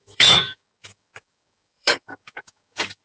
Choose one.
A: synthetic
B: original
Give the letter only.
A